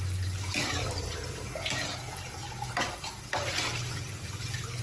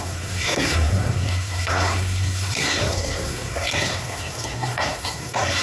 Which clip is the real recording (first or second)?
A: first